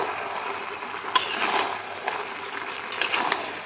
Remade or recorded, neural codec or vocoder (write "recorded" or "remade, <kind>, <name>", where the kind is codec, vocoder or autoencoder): recorded